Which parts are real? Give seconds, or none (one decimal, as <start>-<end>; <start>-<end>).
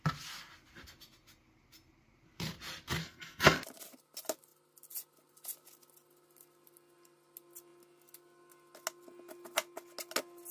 0.0-3.0; 3.6-10.5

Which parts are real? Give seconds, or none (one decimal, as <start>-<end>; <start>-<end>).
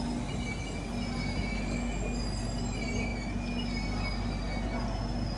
0.0-5.4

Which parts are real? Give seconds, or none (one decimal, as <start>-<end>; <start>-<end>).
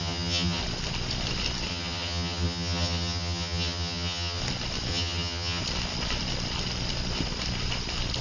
0.6-1.7; 4.4-4.9; 5.6-8.2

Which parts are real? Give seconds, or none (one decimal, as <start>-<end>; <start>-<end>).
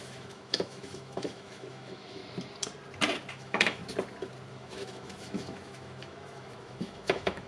2.2-3.3; 3.8-4.5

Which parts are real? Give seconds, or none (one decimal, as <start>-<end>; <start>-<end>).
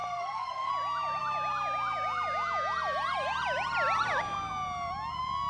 0.7-5.5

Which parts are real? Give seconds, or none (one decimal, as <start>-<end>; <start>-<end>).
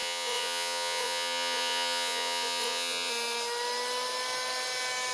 3.1-5.1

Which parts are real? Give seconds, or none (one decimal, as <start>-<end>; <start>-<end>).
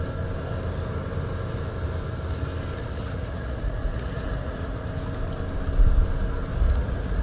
0.0-2.8; 4.9-6.5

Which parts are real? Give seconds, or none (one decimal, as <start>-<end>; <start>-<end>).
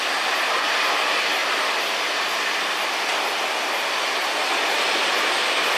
0.0-5.8